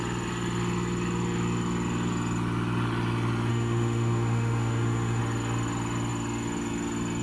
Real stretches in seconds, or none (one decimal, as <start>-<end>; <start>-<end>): 0.0-3.5; 5.2-7.2